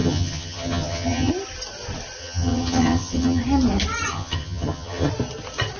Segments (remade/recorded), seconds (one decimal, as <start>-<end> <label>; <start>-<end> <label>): 0.0-1.3 remade; 1.3-2.2 recorded; 2.2-3.4 remade; 3.4-4.1 recorded; 4.1-5.1 remade; 5.1-5.8 recorded